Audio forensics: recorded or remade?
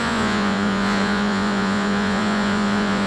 remade